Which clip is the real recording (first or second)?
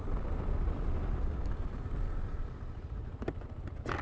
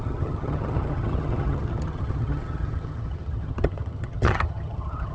first